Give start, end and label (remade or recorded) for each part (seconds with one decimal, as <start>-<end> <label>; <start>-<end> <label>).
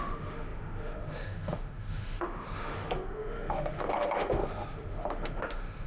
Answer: 0.0-5.9 remade